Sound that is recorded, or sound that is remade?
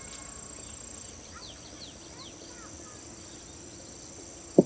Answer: recorded